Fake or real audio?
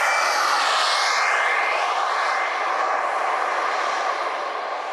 real